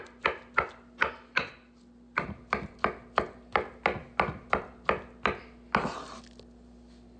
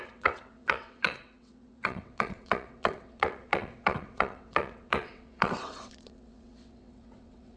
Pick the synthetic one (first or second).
second